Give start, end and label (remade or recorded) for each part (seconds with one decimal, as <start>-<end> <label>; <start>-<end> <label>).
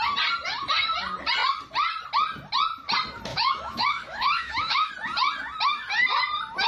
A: 0.0-3.3 recorded; 3.3-4.9 remade; 4.9-6.7 recorded